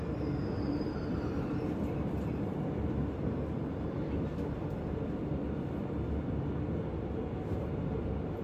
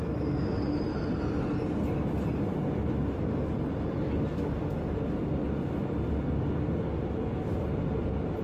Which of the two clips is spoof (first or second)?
first